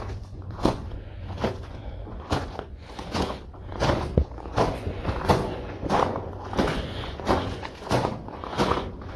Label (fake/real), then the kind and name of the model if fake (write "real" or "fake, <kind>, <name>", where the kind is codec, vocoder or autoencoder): fake, vocoder, Vocos